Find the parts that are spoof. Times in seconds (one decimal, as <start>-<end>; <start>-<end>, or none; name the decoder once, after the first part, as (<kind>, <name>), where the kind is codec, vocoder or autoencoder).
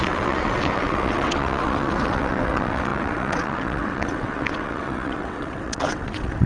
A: 0.0-6.5 (vocoder, WaveNeXt)